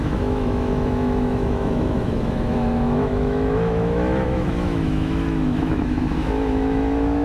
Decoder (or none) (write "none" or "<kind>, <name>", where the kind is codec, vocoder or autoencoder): autoencoder, DAC-VAE